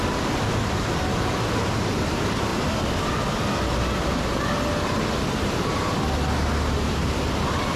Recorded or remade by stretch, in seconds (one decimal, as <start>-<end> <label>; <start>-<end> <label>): 0.0-7.8 recorded